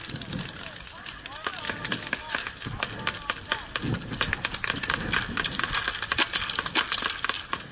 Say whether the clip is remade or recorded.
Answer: recorded